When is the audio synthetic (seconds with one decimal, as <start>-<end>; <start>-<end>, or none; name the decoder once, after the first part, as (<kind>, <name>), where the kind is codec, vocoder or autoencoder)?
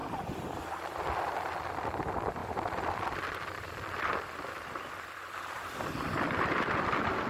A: 0.0-1.7 (vocoder, BigVGAN v2); 2.4-6.8